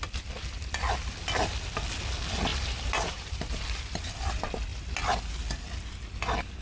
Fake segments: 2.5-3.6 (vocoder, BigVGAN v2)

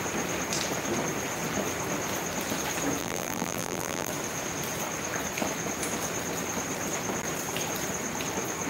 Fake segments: 3.0-4.1 (vocoder, BigVGAN v2)

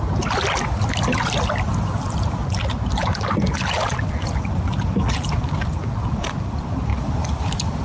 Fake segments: none